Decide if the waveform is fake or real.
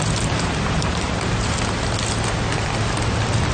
real